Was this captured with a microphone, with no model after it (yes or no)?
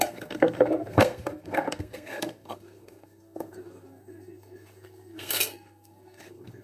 no